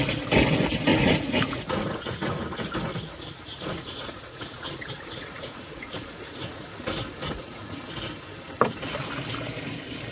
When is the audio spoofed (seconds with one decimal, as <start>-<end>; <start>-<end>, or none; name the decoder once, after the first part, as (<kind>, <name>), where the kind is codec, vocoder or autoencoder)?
0.9-2.8 (vocoder, Vocos); 3.5-6.7; 7.2-7.8